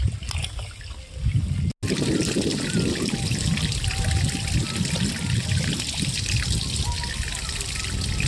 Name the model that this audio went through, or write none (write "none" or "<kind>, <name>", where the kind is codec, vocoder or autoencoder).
none